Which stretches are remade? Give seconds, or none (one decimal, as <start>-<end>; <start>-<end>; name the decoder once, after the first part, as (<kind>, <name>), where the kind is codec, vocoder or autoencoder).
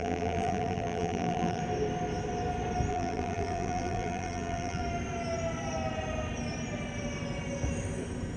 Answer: 0.0-1.6 (vocoder, BigVGAN v2); 2.9-4.8